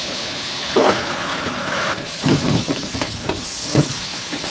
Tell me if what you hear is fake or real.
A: fake